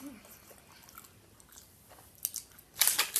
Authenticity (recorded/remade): recorded